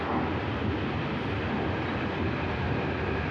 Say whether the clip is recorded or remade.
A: recorded